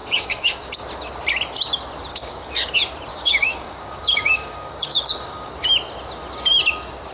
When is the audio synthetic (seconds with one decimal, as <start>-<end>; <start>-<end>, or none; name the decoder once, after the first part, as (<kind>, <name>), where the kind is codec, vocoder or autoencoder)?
0.0-0.7 (codec, DAC); 2.1-2.7; 3.1-5.5